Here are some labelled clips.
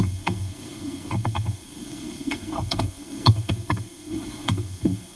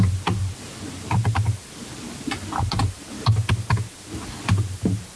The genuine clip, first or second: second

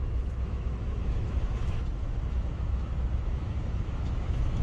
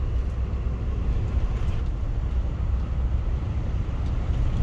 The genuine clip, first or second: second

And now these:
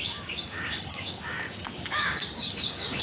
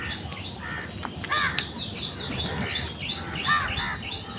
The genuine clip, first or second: second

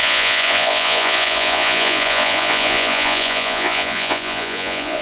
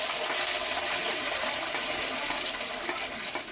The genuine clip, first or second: second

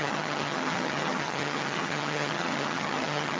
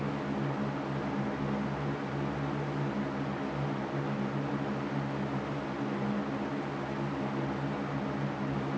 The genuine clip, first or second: second